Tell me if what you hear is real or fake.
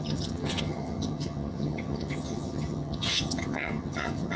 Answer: fake